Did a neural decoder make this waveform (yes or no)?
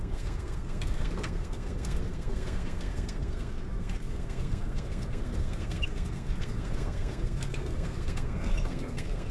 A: yes